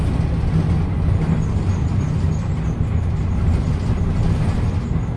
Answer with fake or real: real